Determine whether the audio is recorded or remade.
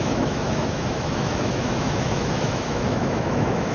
remade